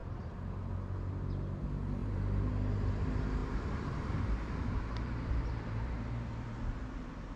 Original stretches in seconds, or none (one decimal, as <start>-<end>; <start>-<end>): 0.6-2.0; 2.5-3.4; 6.1-7.4